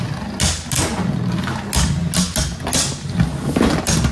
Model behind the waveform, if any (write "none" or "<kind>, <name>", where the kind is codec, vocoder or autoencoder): none